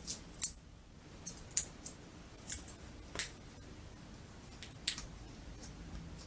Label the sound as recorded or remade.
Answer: recorded